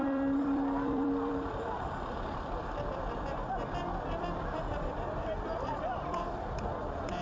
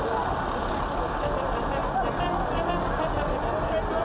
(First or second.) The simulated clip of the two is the first